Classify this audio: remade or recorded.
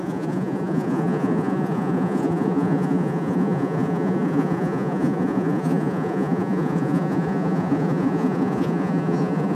remade